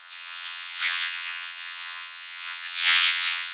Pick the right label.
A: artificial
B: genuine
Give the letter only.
A